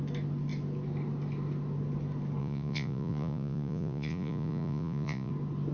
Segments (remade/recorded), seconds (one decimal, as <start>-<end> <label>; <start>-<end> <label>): 0.0-2.4 recorded; 2.4-5.3 remade; 5.3-5.7 recorded